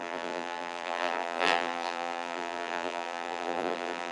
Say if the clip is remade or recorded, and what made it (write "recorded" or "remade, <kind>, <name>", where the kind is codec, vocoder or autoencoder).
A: remade, vocoder, BigVGAN v2